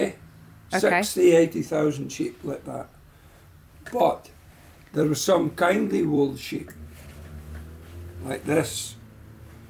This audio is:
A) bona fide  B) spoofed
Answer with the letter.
B